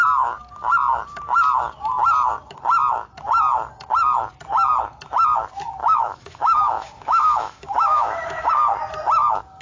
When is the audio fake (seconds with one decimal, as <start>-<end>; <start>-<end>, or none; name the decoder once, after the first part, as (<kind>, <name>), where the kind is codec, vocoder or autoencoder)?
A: 5.8-8.5 (autoencoder, DAC-VAE)